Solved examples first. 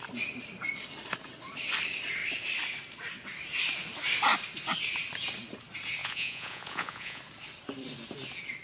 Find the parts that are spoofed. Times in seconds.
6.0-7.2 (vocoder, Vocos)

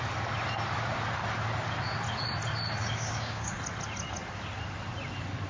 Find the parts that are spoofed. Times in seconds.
2.8-3.6 (codec, DAC)

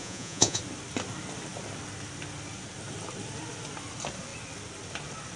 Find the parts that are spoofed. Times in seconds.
0.0-0.6 (vocoder, Vocos)

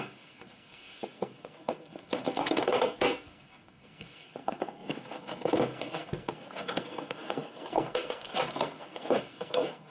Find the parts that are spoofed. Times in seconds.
0.0-9.9 (codec, SNAC)

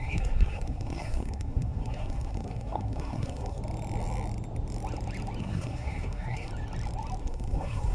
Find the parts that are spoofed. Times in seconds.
0.0-3.6 (codec, SNAC); 5.4-6.5; 7.2-7.9

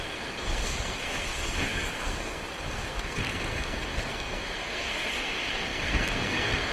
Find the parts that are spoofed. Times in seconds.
0.0-6.7 (codec, SNAC)